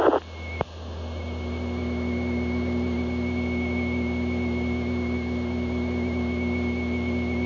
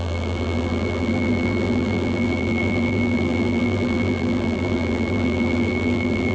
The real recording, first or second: first